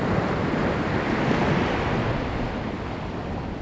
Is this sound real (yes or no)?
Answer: yes